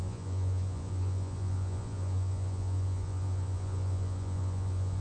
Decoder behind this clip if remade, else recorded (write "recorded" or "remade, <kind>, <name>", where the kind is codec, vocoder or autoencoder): remade, vocoder, Vocos